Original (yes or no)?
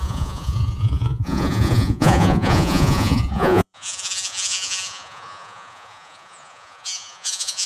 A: no